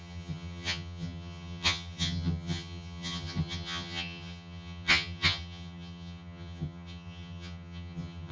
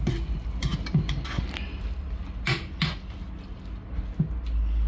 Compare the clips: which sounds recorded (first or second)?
second